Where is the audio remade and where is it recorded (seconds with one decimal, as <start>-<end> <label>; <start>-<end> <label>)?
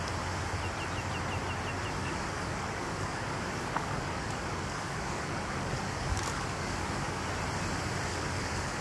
0.0-2.0 recorded; 2.0-7.2 remade; 7.2-8.1 recorded; 8.1-8.8 remade